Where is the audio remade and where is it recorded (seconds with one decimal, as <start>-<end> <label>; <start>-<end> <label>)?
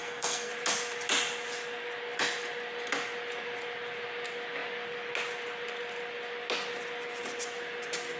0.0-0.5 remade; 0.5-8.2 recorded